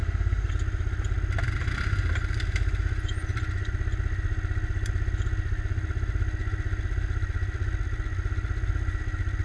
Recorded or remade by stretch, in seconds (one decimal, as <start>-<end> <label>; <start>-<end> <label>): 0.0-0.5 remade; 0.5-9.4 recorded